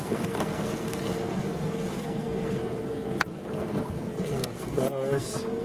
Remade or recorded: remade